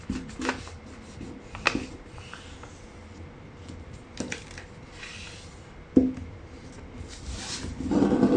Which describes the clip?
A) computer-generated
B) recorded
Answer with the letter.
B